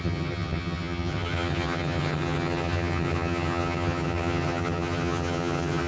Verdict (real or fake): fake